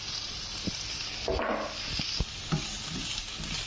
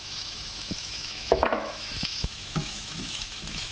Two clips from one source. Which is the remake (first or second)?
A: second